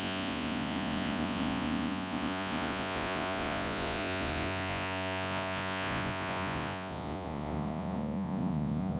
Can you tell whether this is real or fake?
fake